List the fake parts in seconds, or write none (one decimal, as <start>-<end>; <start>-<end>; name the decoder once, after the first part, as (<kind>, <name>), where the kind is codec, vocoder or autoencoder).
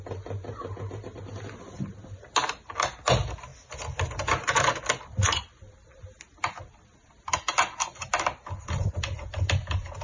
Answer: none